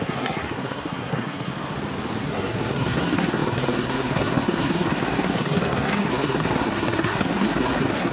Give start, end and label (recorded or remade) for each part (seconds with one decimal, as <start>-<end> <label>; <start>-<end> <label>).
0.0-1.5 remade; 1.5-2.2 recorded; 2.2-8.1 remade